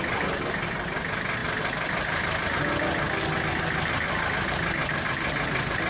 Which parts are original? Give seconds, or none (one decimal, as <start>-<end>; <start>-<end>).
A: 0.0-5.9